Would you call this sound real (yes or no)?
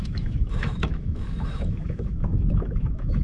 no